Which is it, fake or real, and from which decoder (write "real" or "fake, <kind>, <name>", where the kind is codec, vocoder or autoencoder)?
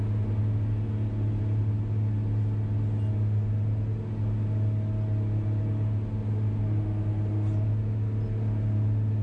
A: real